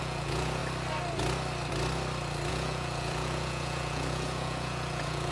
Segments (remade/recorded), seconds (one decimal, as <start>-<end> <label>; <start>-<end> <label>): 0.0-0.6 remade; 0.6-2.5 recorded; 2.5-5.3 remade